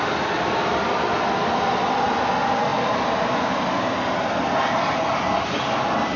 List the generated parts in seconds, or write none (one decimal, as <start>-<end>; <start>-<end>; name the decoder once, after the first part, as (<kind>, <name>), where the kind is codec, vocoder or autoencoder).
none